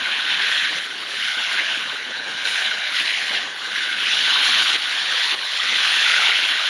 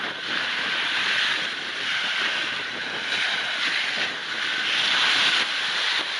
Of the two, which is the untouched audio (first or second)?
second